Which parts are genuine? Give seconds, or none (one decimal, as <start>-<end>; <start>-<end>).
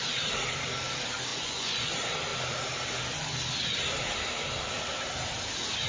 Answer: 0.0-1.3; 1.9-5.9